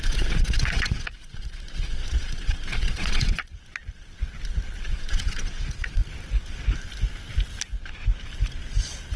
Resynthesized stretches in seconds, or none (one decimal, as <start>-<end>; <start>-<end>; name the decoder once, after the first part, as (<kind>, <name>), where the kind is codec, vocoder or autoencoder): 0.0-3.5 (vocoder, Vocos); 4.9-6.0